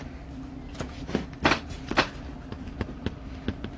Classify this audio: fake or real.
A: real